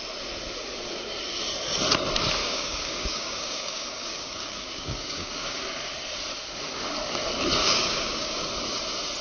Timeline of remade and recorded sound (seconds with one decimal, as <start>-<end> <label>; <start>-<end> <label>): 0.0-2.4 recorded; 2.4-5.6 remade; 5.6-7.6 recorded; 7.6-8.4 remade; 8.4-9.2 recorded